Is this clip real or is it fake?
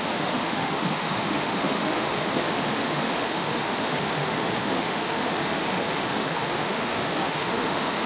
fake